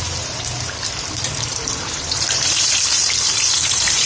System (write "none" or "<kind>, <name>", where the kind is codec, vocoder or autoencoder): vocoder, BigVGAN v2